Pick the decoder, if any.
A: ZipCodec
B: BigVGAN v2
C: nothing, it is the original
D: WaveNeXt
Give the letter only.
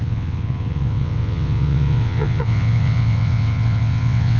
D